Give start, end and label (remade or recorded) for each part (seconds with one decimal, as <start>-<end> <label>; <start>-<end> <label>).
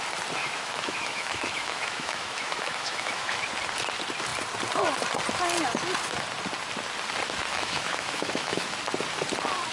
0.0-0.4 recorded; 0.4-3.4 remade; 3.4-7.5 recorded; 7.5-8.7 remade; 8.7-9.7 recorded